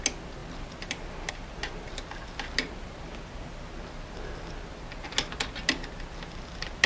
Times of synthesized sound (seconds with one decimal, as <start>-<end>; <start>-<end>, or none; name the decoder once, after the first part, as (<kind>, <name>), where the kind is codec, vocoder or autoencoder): none